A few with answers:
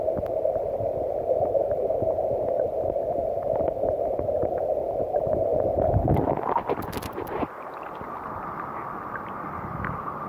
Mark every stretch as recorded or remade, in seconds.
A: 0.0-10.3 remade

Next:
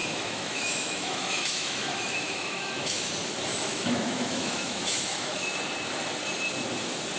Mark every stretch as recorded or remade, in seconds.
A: 0.0-3.1 remade; 3.1-3.5 recorded; 3.5-5.6 remade; 5.6-7.2 recorded